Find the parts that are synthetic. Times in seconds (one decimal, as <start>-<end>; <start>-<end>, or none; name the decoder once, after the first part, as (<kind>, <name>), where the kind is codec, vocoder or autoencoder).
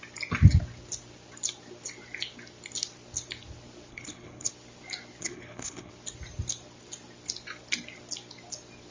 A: 3.9-4.5 (codec, HILCodec); 5.2-5.9